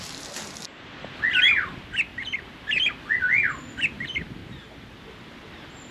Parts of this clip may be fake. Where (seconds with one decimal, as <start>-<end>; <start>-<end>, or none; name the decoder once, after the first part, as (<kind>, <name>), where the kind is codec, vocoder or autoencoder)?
none

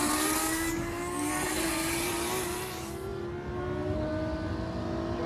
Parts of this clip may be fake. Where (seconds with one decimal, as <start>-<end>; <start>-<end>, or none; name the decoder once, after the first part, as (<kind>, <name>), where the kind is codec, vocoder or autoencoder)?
0.4-1.3 (codec, DAC)

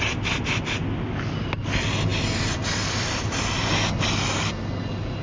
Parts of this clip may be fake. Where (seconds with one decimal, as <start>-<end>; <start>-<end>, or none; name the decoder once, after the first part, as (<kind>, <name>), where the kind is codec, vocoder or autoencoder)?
none

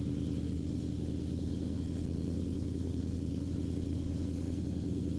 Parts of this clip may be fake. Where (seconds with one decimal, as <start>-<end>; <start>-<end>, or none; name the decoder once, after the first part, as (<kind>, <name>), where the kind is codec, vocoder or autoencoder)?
0.4-3.5 (codec, SNAC); 3.9-5.2

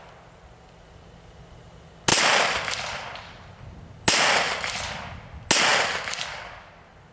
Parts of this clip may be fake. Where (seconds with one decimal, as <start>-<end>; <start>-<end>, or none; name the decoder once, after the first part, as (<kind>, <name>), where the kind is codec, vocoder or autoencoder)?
none

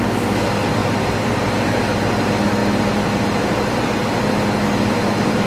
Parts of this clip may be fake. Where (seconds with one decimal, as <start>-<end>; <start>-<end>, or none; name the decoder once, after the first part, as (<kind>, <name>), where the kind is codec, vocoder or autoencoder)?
0.8-1.4 (vocoder, BigVGAN v2)